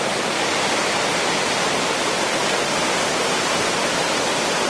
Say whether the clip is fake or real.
real